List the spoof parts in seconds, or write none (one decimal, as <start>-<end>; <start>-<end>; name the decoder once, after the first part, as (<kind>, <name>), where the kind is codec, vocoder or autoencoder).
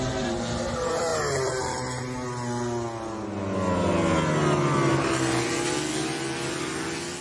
none